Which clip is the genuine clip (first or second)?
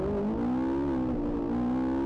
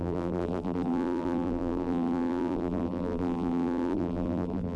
first